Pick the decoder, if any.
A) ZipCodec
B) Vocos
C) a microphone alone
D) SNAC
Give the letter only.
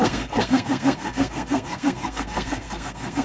D